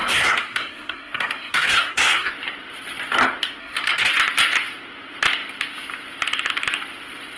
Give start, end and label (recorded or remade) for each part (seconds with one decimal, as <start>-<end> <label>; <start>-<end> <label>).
0.0-2.3 remade; 2.3-3.6 recorded; 3.6-4.1 remade; 4.1-7.4 recorded